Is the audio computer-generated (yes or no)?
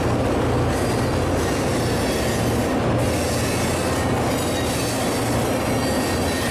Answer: no